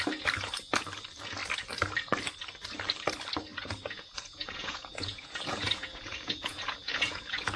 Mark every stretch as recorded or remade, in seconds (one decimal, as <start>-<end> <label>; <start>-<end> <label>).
0.0-3.5 recorded; 3.5-7.6 remade